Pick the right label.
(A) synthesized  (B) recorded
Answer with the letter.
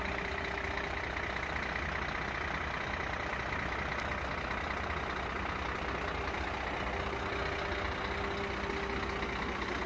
B